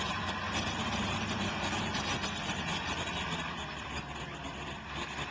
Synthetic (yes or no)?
yes